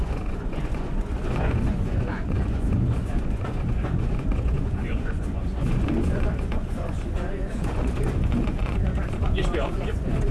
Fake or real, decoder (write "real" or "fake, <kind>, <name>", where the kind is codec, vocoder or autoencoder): fake, vocoder, Vocos